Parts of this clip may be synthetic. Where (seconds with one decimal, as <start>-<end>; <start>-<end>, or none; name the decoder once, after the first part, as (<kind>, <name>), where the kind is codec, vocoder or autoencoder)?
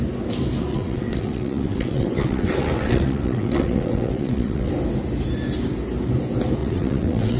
0.7-4.7 (vocoder, WaveNeXt); 6.6-7.4